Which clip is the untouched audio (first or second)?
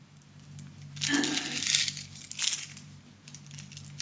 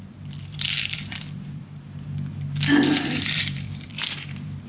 first